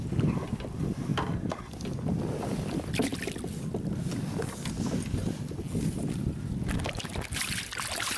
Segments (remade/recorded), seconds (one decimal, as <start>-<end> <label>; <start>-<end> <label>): 0.0-8.2 recorded